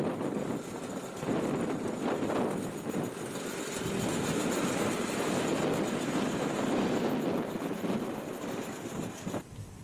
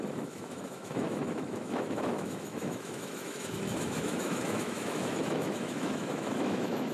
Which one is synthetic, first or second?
second